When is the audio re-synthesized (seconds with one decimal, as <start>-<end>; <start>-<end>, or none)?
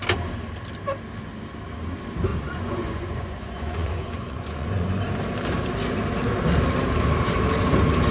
2.3-5.0